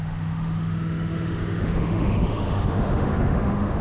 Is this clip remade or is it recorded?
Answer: remade